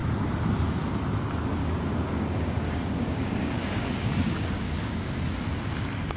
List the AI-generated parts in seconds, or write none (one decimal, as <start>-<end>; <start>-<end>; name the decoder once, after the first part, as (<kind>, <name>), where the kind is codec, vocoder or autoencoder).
1.6-5.3 (codec, DAC)